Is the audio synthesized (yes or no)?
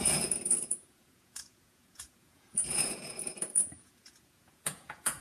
yes